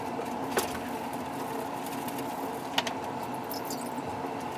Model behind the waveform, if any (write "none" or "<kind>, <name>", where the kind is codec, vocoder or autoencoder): none